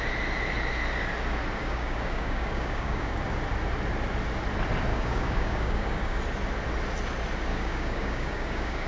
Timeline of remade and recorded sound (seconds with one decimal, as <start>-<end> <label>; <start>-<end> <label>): 0.0-1.6 recorded; 1.6-3.2 remade; 3.2-4.9 recorded; 4.9-6.2 remade; 6.2-7.5 recorded; 7.5-8.9 remade